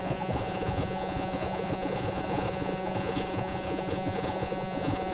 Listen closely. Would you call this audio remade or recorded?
remade